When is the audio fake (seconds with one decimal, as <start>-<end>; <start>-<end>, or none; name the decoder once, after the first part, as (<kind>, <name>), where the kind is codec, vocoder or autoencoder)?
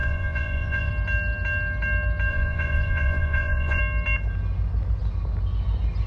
0.0-0.9 (vocoder, Vocos); 2.3-3.8